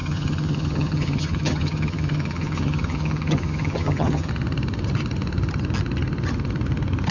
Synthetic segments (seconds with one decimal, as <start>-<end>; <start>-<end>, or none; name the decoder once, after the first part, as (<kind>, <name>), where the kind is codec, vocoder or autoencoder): 0.0-4.3 (vocoder, HiFi-GAN)